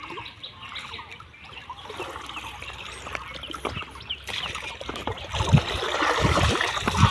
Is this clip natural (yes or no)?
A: yes